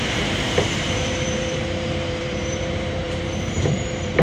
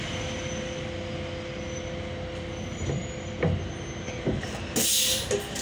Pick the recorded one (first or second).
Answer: second